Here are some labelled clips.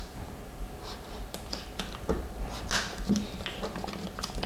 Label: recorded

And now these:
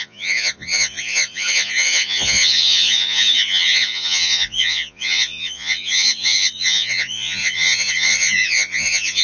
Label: remade